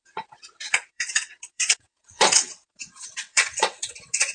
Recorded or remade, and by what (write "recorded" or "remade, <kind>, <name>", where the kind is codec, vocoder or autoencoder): remade, vocoder, WaveNeXt